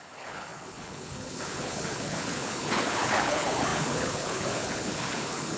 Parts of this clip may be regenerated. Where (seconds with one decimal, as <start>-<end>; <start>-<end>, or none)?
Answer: 0.0-5.6